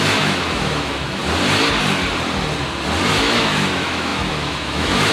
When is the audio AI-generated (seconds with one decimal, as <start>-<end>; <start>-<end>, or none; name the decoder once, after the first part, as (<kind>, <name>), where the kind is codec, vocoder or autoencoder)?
0.0-1.2 (autoencoder, DAC-VAE); 3.1-5.1